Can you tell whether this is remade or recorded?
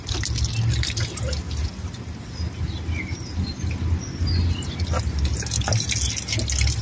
recorded